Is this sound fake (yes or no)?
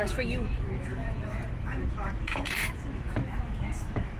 yes